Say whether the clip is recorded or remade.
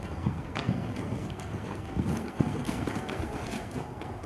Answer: remade